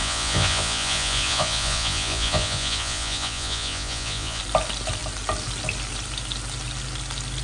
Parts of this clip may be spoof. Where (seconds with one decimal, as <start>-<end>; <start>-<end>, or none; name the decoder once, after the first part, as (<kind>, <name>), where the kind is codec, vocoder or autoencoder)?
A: 0.0-4.4 (vocoder, Vocos)